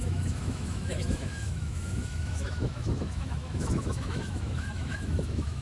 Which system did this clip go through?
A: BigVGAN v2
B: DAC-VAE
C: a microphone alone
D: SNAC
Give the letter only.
B